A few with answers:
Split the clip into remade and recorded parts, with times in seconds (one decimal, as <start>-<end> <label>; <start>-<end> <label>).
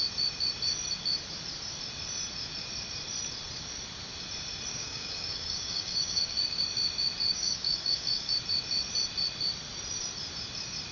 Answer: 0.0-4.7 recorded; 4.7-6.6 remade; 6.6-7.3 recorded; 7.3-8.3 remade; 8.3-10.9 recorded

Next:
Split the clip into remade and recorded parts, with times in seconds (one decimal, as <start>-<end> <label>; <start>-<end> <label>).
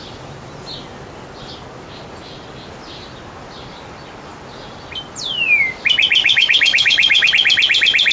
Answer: 0.0-6.2 recorded; 6.2-7.3 remade; 7.3-8.1 recorded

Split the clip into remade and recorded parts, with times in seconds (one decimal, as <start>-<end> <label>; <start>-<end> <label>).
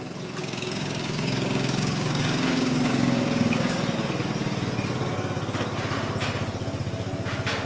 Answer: 0.0-0.4 recorded; 0.4-3.8 remade; 3.8-7.7 recorded